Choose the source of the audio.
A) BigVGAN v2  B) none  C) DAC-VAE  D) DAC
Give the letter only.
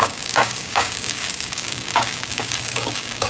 D